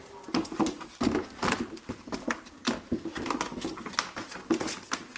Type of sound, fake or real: real